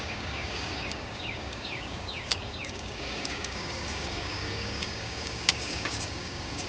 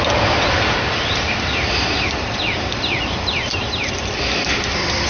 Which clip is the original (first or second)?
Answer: second